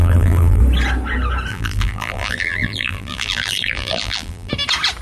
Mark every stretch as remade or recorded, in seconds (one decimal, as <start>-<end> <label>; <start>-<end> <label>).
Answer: 0.0-0.6 remade; 0.6-1.5 recorded; 1.5-4.5 remade; 4.5-5.0 recorded